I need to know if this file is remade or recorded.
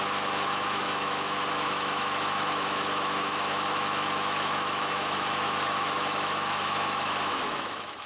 remade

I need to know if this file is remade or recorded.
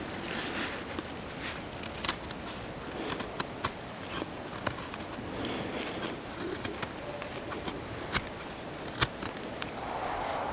recorded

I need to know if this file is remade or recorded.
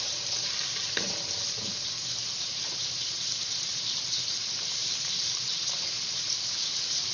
remade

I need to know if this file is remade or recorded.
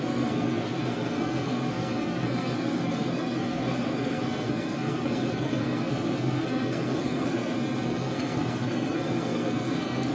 remade